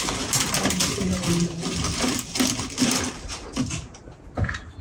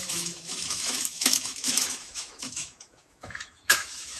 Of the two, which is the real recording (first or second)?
first